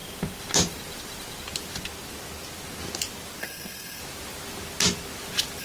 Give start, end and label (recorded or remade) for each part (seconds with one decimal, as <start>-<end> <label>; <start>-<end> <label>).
0.0-3.4 recorded; 3.4-4.0 remade; 4.0-5.6 recorded